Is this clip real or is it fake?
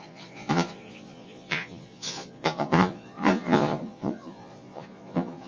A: fake